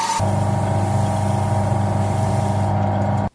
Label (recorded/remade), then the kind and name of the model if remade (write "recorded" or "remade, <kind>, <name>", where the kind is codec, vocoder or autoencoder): recorded